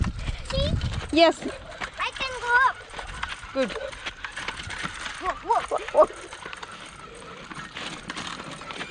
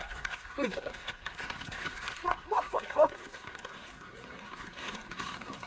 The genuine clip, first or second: first